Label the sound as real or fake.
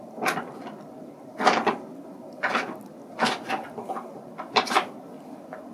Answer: real